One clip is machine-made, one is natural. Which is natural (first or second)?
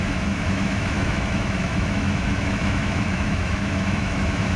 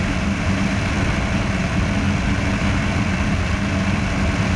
second